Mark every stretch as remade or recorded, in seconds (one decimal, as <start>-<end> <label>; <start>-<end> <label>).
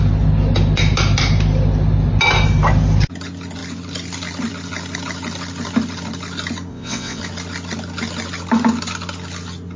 0.0-6.7 recorded; 6.7-7.2 remade; 7.2-9.8 recorded